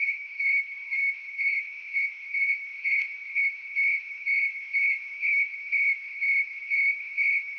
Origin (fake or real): fake